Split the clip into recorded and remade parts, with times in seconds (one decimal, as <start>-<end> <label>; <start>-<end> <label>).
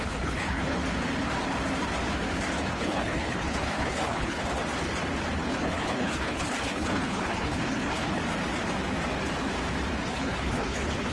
0.0-0.8 remade; 0.8-2.7 recorded; 2.7-4.4 remade; 4.4-5.4 recorded; 5.4-8.2 remade; 8.2-10.0 recorded; 10.0-11.1 remade